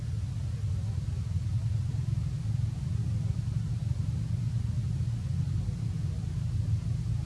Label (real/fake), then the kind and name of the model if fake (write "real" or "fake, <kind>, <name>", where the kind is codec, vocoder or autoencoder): real